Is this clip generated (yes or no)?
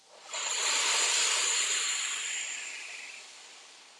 no